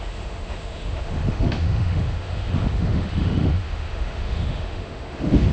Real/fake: fake